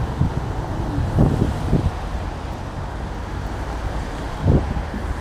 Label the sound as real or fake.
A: fake